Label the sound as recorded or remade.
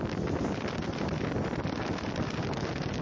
recorded